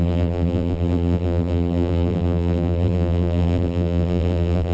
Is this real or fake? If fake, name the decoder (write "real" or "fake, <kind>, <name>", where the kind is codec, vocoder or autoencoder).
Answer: fake, vocoder, BigVGAN v2